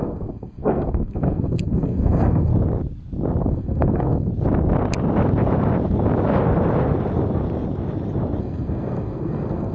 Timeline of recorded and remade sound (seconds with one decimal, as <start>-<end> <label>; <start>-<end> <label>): 0.0-2.5 remade; 2.5-3.4 recorded; 3.4-4.3 remade; 4.3-8.4 recorded; 8.4-9.7 remade